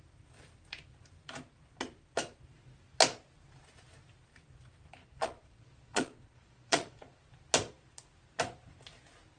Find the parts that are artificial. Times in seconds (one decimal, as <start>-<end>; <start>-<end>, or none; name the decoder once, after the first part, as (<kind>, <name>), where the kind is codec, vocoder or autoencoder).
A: 5.0-7.2 (vocoder, Vocos)